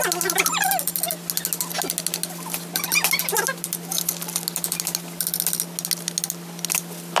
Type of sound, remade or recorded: recorded